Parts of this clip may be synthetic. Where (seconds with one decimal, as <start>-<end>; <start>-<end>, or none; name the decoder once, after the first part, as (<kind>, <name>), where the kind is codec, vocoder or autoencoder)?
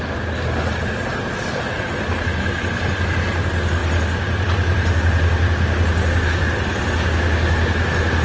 none